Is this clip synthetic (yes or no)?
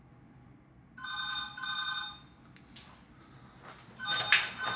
no